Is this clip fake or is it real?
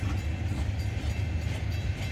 real